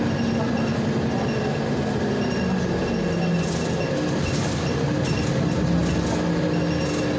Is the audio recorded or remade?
recorded